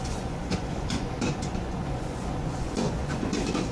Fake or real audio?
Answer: fake